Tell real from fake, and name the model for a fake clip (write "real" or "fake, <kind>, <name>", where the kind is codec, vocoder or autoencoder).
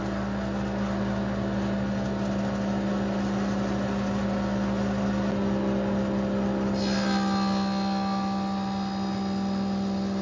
real